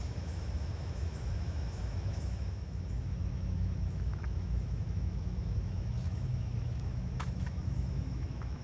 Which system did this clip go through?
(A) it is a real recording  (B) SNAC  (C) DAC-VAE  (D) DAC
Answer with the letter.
C